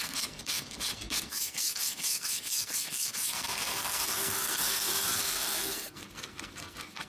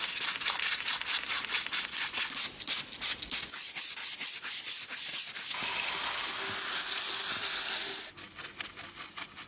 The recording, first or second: second